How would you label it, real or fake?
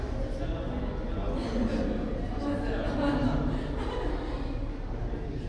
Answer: real